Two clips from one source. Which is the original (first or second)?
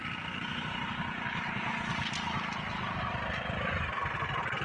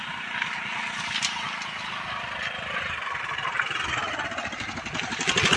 first